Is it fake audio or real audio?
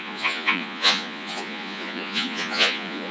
fake